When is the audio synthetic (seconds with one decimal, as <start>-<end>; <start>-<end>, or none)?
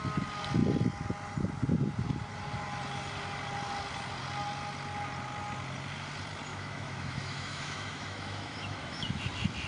6.5-9.2